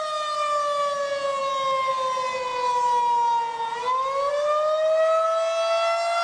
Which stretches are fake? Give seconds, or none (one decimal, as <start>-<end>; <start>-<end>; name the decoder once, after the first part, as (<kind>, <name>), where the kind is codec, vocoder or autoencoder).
none